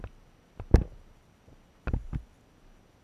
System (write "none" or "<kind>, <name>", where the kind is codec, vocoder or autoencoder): none